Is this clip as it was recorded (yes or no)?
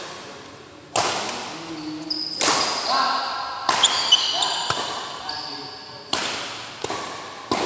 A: yes